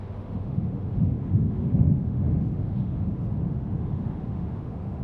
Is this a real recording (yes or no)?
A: no